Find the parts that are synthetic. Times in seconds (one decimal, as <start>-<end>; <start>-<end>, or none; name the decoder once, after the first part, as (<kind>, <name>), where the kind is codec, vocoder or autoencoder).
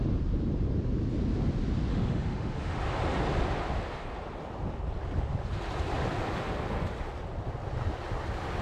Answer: 1.9-2.8 (autoencoder, DAC-VAE)